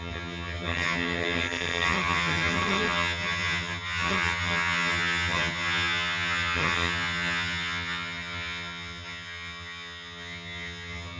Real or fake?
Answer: fake